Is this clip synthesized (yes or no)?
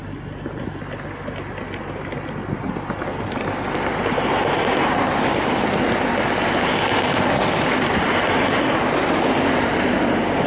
no